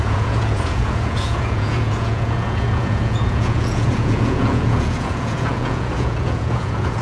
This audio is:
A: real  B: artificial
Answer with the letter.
B